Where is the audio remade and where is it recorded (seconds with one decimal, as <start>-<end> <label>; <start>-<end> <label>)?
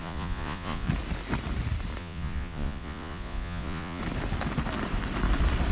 0.0-0.9 remade; 0.9-2.0 recorded; 2.0-4.0 remade; 4.0-5.7 recorded